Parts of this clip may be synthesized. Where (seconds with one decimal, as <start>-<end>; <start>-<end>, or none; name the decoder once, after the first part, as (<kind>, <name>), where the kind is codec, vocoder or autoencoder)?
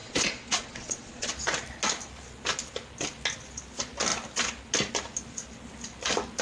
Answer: 0.0-1.3 (vocoder, Vocos)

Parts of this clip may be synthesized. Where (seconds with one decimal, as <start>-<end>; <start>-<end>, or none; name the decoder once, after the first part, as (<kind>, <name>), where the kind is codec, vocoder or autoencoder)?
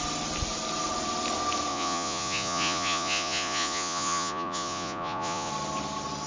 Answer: 1.7-5.5 (vocoder, Vocos)